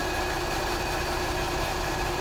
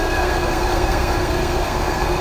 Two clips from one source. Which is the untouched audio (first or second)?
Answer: first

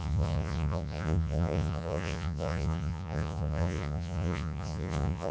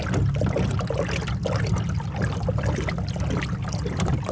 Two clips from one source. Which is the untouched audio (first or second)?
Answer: second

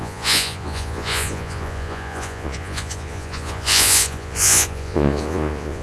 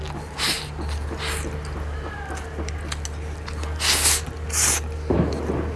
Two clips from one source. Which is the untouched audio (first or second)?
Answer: second